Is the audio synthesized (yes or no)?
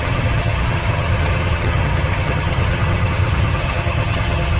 yes